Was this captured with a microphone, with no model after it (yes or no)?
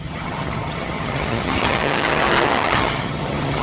no